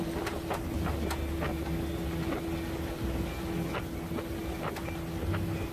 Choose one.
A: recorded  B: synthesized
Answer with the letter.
A